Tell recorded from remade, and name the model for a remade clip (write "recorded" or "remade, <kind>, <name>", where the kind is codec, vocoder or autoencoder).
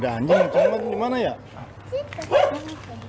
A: recorded